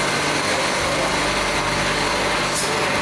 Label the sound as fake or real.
real